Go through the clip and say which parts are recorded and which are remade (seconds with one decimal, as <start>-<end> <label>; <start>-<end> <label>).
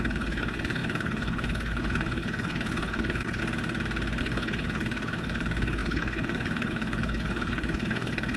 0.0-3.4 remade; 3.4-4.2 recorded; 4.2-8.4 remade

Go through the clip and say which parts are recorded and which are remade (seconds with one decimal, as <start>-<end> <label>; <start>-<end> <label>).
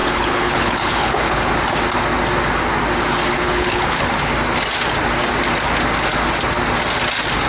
0.0-1.4 remade; 1.4-3.3 recorded; 3.3-4.1 remade; 4.1-7.5 recorded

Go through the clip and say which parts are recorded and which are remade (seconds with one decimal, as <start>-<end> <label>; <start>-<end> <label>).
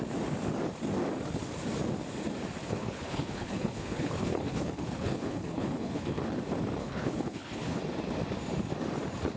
0.0-2.6 recorded; 2.6-6.2 remade; 6.2-6.8 recorded; 6.8-7.8 remade; 7.8-9.4 recorded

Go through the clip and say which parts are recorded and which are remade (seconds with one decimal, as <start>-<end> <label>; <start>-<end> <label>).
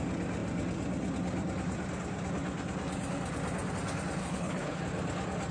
0.0-4.2 recorded; 4.2-4.8 remade; 4.8-5.5 recorded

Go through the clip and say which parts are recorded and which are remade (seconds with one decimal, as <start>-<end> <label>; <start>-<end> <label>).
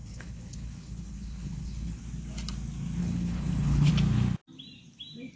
0.0-2.0 remade; 2.0-3.0 recorded; 3.0-3.9 remade; 3.9-5.4 recorded